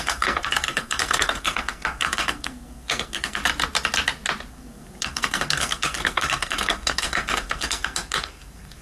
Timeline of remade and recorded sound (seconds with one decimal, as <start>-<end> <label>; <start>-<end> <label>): 0.0-3.4 remade; 3.4-4.5 recorded; 4.5-8.8 remade